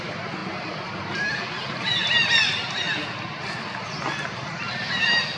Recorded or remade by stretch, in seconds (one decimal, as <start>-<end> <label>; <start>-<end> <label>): 0.0-5.4 recorded